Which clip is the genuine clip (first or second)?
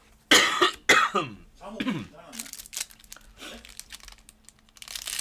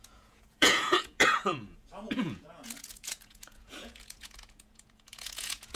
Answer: first